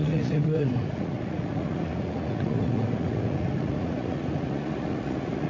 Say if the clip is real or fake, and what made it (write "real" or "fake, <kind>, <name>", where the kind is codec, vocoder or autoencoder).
fake, vocoder, Vocos